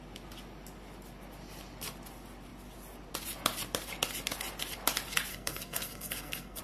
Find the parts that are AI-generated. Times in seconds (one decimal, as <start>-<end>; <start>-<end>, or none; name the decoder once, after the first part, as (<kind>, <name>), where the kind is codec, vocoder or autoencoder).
5.3-6.6 (codec, SNAC)